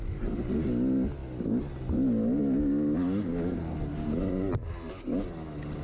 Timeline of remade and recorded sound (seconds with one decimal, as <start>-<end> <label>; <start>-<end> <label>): 0.0-5.8 recorded